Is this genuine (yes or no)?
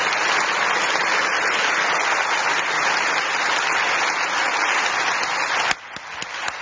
yes